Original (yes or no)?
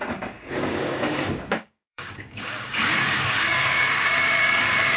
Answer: no